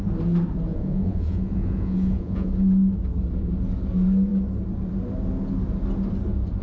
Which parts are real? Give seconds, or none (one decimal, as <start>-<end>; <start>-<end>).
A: 0.0-0.7; 2.5-6.6